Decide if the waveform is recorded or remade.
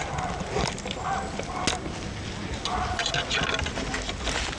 recorded